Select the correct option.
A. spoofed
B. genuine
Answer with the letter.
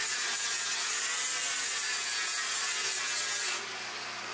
B